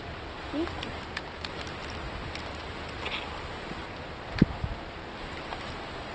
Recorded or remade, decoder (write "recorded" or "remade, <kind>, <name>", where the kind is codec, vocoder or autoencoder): remade, vocoder, BigVGAN v2